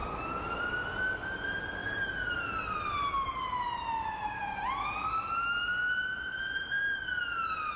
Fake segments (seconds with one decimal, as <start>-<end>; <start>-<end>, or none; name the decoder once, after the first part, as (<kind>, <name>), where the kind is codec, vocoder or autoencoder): none